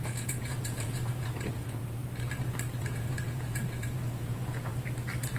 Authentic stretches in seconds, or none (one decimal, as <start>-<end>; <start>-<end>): 2.0-2.8; 4.7-5.4